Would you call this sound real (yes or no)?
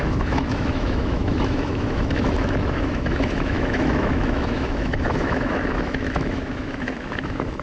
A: no